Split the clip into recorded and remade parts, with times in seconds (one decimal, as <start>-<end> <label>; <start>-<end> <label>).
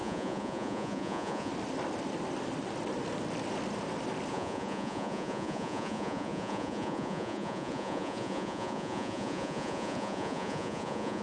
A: 0.0-1.5 remade; 1.5-4.3 recorded; 4.3-11.2 remade